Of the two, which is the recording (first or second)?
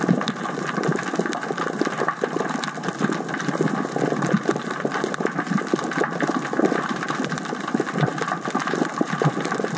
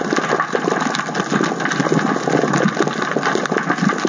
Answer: second